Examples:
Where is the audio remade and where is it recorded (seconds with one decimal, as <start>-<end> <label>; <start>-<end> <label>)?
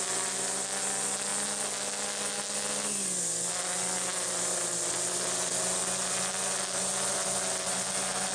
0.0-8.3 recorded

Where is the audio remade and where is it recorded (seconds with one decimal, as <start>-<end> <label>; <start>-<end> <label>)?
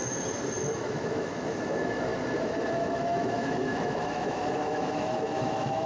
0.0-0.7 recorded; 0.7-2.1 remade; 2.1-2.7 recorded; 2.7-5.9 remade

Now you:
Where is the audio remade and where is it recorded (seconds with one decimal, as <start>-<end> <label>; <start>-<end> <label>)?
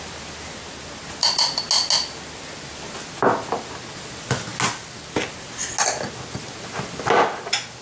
0.0-7.8 recorded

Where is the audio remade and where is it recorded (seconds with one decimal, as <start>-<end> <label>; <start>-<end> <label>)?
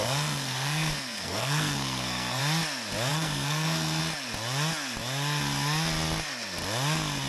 0.0-2.4 remade; 2.4-3.1 recorded; 3.1-4.0 remade; 4.0-7.3 recorded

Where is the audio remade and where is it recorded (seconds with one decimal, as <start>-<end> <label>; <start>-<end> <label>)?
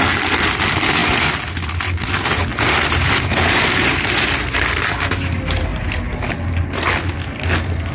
0.0-2.5 recorded; 2.5-4.6 remade; 4.6-5.7 recorded; 5.7-6.2 remade; 6.2-7.9 recorded